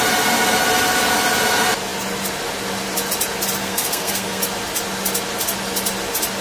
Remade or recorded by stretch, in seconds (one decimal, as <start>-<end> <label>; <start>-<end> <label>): 0.0-3.6 recorded; 3.6-4.4 remade; 4.4-6.4 recorded